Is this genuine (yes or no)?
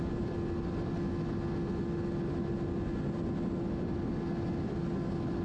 yes